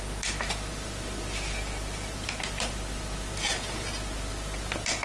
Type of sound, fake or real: real